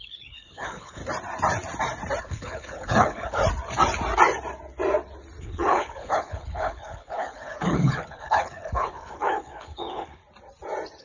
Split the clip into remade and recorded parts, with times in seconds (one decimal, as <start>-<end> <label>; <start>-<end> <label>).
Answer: 0.0-1.0 remade; 1.0-2.2 recorded; 2.2-3.4 remade; 3.4-5.4 recorded; 5.4-10.2 remade; 10.2-11.0 recorded